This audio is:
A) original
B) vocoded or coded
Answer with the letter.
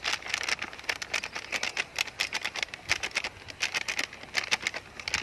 A